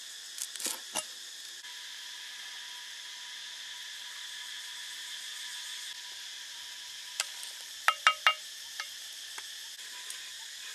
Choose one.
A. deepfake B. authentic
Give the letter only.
B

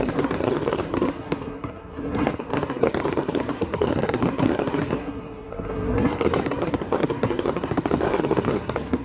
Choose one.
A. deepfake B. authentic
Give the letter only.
A